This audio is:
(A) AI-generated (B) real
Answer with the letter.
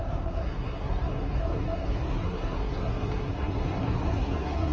A